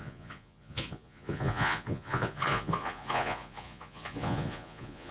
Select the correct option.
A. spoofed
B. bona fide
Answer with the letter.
A